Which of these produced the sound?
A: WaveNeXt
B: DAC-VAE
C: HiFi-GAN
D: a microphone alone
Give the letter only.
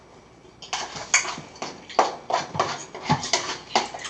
D